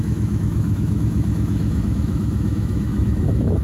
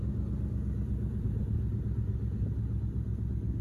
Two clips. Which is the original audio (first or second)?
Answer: second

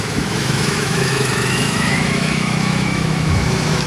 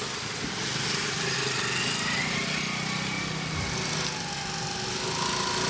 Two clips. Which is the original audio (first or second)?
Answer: second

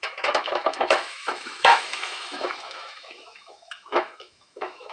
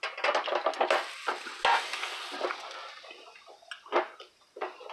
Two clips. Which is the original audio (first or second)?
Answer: second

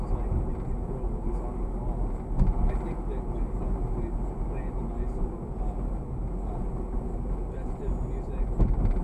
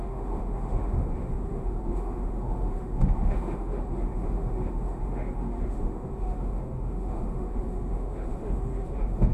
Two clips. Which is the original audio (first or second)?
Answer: first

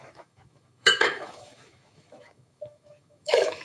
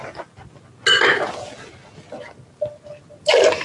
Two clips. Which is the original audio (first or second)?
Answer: second